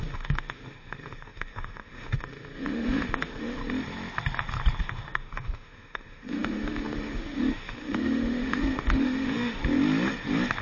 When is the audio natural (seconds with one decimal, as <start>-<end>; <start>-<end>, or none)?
3.6-4.8; 9.6-10.6